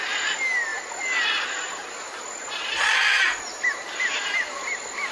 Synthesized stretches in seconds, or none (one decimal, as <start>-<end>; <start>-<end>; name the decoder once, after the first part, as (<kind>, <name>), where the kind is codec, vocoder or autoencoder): none